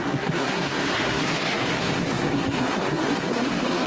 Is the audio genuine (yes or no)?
no